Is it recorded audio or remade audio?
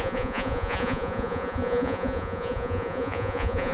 remade